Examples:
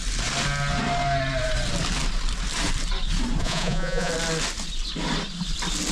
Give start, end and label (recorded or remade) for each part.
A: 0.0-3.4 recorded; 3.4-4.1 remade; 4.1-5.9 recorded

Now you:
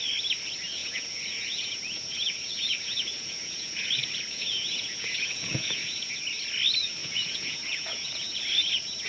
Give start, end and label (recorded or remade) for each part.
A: 0.0-0.8 recorded; 0.8-6.1 remade; 6.1-7.0 recorded; 7.0-8.5 remade; 8.5-9.1 recorded

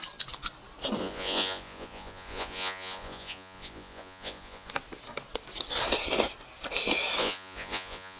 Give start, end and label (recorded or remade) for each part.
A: 0.0-1.0 recorded; 1.0-4.7 remade; 4.7-7.2 recorded; 7.2-8.2 remade

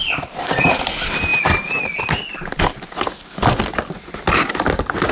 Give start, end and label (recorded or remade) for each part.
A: 0.0-5.1 recorded

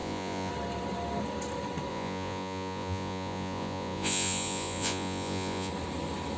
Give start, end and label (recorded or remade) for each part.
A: 0.0-0.5 remade; 0.5-1.9 recorded; 1.9-5.7 remade; 5.7-6.4 recorded

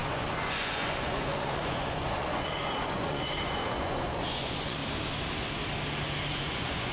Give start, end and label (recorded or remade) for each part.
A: 0.0-4.8 remade; 4.8-6.3 recorded; 6.3-6.9 remade